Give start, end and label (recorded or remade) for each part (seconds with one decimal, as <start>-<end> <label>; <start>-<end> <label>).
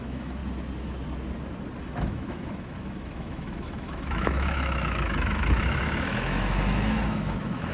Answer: 0.0-0.4 remade; 0.4-1.8 recorded; 1.8-7.7 remade